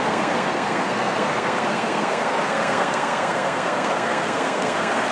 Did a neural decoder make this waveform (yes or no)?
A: yes